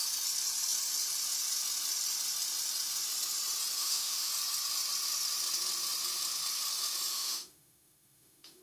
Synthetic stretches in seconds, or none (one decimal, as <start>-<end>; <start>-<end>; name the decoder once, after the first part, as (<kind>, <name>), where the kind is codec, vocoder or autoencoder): 3.8-4.3 (autoencoder, DAC-VAE); 7.1-8.6

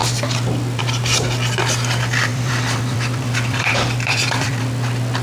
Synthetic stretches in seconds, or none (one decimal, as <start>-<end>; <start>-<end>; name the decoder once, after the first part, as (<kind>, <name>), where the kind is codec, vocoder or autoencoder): 2.3-4.6 (vocoder, BigVGAN v2)

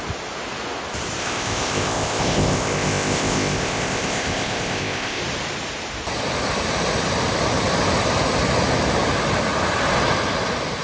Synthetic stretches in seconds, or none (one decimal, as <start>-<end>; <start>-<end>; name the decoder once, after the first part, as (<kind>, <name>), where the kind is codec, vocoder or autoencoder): 1.2-5.2 (codec, ZipCodec)

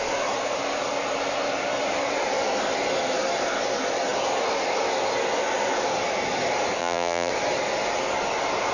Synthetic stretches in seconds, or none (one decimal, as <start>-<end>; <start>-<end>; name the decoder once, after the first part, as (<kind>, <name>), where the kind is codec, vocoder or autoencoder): 6.8-7.3 (vocoder, BigVGAN v2)

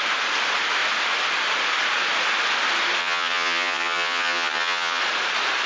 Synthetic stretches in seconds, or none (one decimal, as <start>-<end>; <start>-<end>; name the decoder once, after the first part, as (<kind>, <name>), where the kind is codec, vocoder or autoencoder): 3.0-5.0 (vocoder, HiFi-GAN)

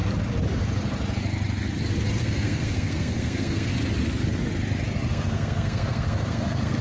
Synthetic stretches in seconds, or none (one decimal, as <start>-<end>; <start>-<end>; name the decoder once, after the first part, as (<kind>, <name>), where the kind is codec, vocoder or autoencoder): 2.2-3.7 (codec, SNAC); 5.1-6.8